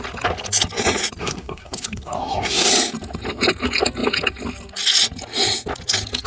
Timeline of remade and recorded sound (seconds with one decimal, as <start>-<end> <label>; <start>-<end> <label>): 0.0-1.2 recorded; 1.2-2.7 remade; 2.7-6.3 recorded